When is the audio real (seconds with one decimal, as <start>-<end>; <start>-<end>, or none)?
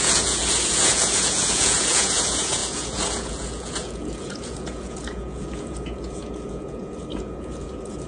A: none